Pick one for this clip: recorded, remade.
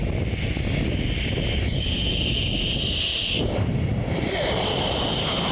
recorded